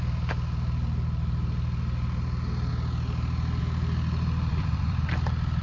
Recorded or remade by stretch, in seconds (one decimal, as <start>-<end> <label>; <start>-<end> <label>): 0.0-4.5 recorded; 4.5-5.1 remade; 5.1-5.6 recorded